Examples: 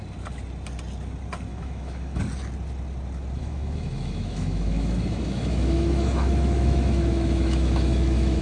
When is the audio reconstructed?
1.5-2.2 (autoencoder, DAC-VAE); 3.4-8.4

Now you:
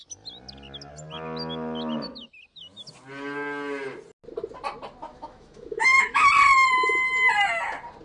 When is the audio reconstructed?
5.1-6.3 (autoencoder, DAC-VAE)

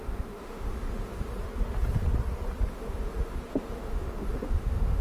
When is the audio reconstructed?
0.0-1.3 (autoencoder, DAC-VAE); 2.7-5.0